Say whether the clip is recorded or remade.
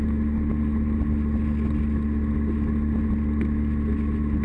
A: recorded